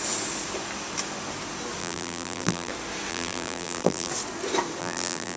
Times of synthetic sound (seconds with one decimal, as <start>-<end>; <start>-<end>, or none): 1.8-2.7; 3.1-4.1; 4.8-5.4